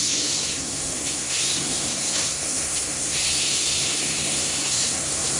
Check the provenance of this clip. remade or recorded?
remade